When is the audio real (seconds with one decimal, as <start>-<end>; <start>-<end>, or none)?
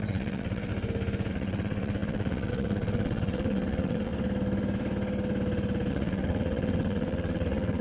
0.7-1.3; 4.1-5.9